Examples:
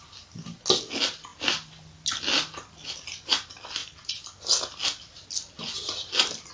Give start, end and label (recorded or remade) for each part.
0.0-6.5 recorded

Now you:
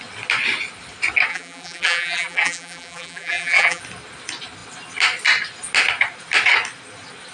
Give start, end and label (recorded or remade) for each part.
0.0-1.3 recorded; 1.3-3.8 remade; 3.8-7.3 recorded

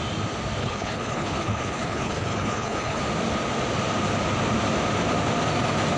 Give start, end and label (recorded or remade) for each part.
0.0-0.6 recorded; 0.6-3.0 remade; 3.0-6.0 recorded

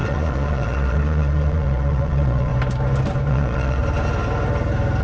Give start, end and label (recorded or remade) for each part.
0.0-2.5 remade; 2.5-3.3 recorded; 3.3-3.8 remade; 3.8-5.0 recorded

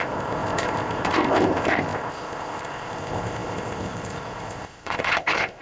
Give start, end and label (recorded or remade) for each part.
0.0-5.6 remade

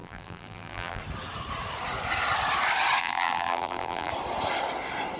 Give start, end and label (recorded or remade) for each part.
0.0-1.0 remade; 1.0-3.0 recorded; 3.0-4.1 remade; 4.1-5.2 recorded